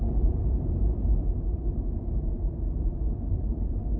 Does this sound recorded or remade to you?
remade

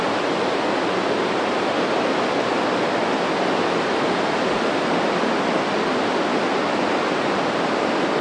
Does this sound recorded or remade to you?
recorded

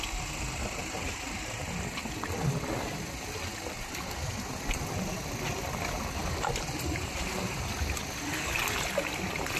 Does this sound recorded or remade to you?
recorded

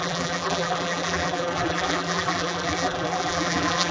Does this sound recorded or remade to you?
remade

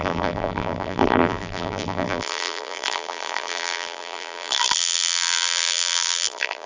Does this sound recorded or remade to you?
remade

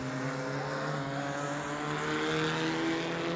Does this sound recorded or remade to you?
recorded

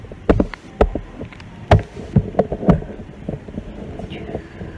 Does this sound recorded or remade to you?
recorded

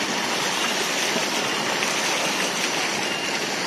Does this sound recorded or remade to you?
recorded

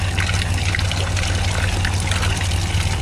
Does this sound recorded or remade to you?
recorded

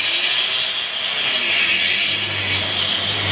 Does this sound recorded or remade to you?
recorded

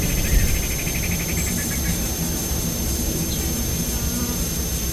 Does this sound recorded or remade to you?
recorded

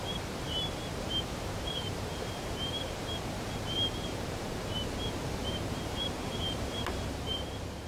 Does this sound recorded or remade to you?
remade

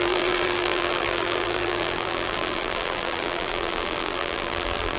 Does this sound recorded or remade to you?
remade